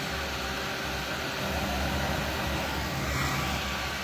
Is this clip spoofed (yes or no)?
no